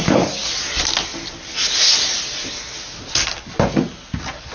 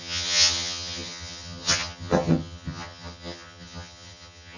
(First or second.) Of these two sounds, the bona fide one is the first